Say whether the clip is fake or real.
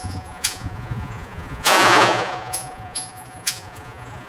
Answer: fake